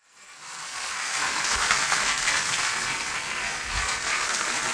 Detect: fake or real fake